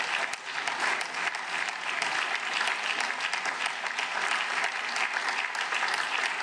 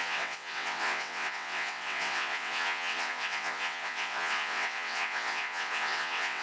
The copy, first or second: second